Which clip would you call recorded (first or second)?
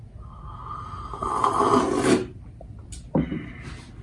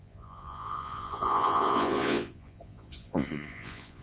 first